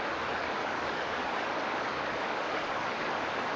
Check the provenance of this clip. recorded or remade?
remade